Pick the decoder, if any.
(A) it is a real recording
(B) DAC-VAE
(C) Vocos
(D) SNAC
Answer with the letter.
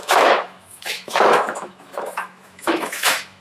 B